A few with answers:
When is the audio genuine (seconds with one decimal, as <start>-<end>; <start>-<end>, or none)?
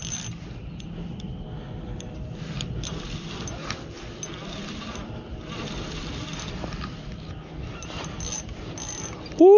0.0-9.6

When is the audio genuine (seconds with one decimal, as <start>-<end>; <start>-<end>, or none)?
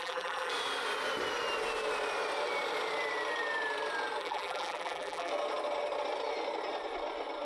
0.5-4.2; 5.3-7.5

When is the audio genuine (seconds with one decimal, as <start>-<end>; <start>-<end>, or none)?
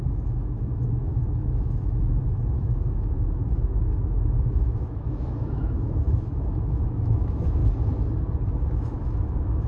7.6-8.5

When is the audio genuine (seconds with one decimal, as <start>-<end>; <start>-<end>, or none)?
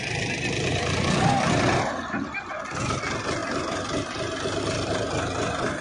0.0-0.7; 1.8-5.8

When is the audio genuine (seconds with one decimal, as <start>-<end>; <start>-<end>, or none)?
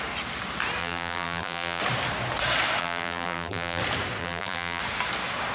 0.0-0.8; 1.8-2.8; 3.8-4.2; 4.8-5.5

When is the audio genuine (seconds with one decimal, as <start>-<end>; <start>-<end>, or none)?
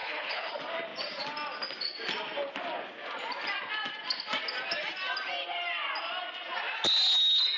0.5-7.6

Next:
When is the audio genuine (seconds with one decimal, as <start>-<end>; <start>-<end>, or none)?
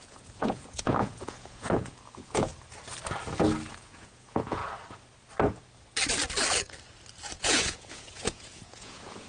2.5-3.7; 4.6-7.4